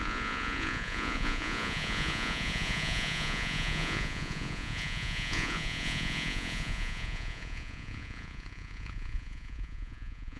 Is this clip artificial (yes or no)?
yes